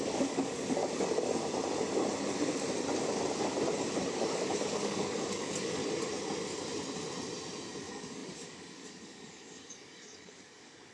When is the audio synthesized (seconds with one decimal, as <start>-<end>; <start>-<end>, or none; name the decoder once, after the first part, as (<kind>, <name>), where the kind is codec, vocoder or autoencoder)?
0.0-0.8 (codec, DAC); 4.0-5.8; 7.8-10.9